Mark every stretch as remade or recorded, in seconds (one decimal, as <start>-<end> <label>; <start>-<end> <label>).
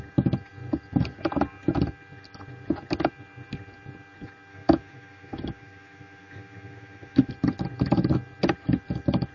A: 0.0-4.5 recorded; 4.5-7.3 remade; 7.3-9.3 recorded